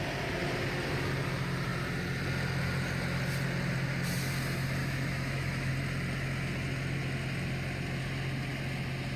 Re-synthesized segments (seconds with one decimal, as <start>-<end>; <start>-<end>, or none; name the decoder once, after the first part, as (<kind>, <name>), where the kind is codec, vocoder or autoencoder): 4.8-5.7 (autoencoder, DAC-VAE)